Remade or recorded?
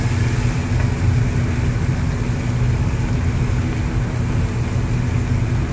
recorded